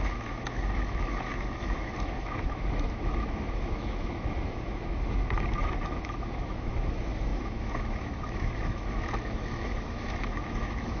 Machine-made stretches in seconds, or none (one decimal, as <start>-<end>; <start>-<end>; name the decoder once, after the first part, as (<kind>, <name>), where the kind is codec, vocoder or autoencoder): 0.0-11.0 (autoencoder, DAC-VAE)